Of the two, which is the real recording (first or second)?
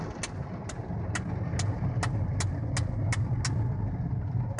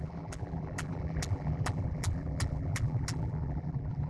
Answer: first